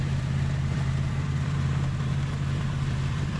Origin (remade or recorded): remade